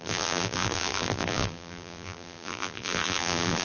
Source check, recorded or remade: remade